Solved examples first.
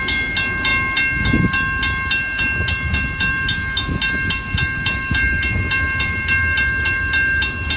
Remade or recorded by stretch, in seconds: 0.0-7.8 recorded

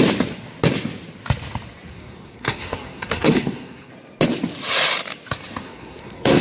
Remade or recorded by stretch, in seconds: 0.0-1.9 recorded; 1.9-3.9 remade; 3.9-5.6 recorded; 5.6-6.4 remade

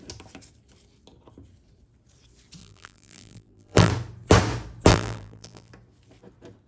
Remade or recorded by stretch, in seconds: 0.0-2.6 recorded; 2.6-3.9 remade; 3.9-4.9 recorded; 4.9-5.7 remade; 5.7-6.7 recorded

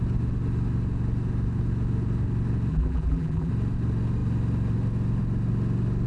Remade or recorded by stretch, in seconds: 0.0-2.7 recorded; 2.7-3.5 remade; 3.5-6.1 recorded

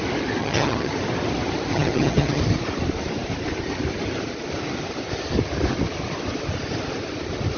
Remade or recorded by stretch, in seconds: 0.0-0.4 recorded; 0.4-0.9 remade; 0.9-1.7 recorded; 1.7-2.4 remade; 2.4-7.6 recorded

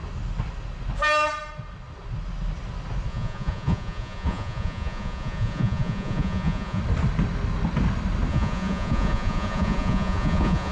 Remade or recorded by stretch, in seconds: 0.0-3.1 recorded; 3.1-6.8 remade; 6.8-8.3 recorded; 8.3-10.7 remade

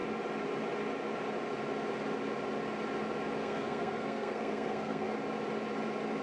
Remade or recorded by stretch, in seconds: 0.0-3.4 recorded; 3.4-5.1 remade; 5.1-6.2 recorded